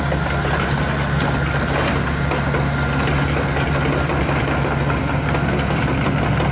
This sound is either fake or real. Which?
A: real